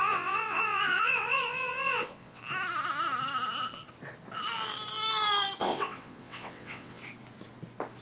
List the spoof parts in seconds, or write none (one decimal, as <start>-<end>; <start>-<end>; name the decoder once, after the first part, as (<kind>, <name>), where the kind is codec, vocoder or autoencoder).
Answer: 0.0-2.4 (vocoder, WaveNeXt); 5.6-7.0